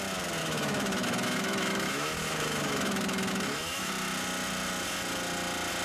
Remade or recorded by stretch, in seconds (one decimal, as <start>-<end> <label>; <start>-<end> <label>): 0.0-0.4 recorded; 0.4-3.9 remade; 3.9-5.8 recorded